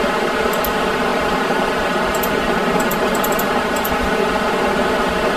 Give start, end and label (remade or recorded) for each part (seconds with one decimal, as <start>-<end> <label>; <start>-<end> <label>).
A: 0.0-1.1 recorded; 1.1-4.3 remade; 4.3-5.4 recorded